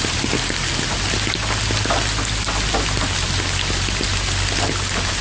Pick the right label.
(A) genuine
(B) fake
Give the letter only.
A